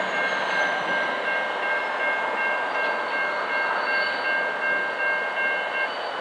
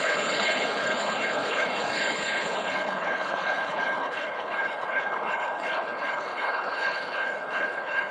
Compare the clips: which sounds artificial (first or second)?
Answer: second